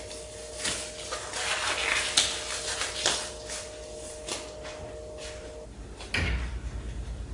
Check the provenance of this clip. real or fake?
real